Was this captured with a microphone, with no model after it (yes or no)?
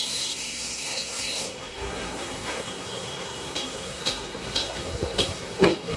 no